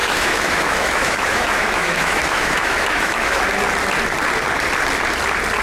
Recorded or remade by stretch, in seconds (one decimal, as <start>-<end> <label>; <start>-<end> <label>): 0.0-3.4 remade; 3.4-5.6 recorded